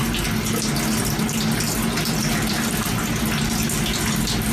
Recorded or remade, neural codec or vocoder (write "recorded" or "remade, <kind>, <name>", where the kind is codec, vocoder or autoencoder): recorded